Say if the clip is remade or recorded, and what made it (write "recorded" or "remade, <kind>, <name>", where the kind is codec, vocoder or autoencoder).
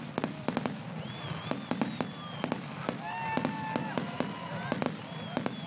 recorded